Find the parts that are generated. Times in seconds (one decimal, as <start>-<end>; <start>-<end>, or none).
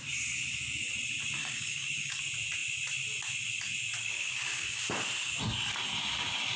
1.4-2.2; 4.0-4.8